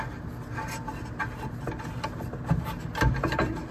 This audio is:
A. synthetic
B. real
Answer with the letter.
B